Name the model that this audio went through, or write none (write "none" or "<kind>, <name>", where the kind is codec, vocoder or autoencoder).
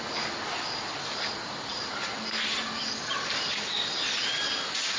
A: none